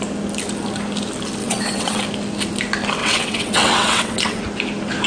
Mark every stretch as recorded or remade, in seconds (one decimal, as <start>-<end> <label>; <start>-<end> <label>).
0.0-1.4 recorded; 1.4-2.0 remade; 2.0-3.0 recorded; 3.0-4.4 remade; 4.4-5.1 recorded